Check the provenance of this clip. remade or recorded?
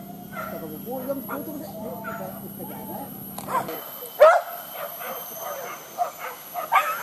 recorded